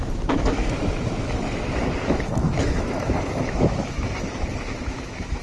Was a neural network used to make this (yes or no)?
yes